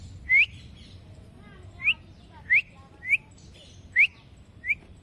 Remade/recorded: remade